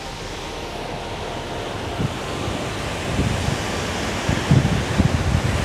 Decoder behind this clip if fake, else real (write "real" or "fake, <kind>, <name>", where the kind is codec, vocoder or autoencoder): real